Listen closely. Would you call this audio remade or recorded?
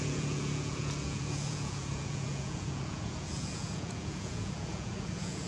remade